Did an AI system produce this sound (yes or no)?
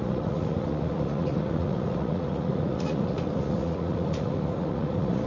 yes